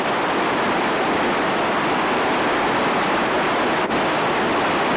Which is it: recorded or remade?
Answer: recorded